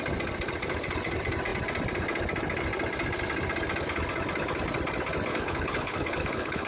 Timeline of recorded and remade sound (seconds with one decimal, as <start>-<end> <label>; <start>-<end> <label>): 0.0-5.3 recorded; 5.3-6.7 remade